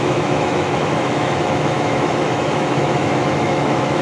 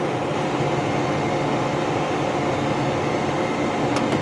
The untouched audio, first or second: second